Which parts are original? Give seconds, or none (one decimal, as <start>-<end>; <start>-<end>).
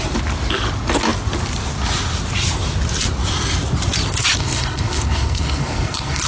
0.0-4.4